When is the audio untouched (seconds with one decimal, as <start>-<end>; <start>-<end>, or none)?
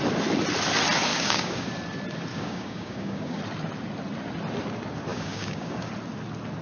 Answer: 0.0-1.1; 1.7-2.3; 3.4-5.1; 5.9-6.6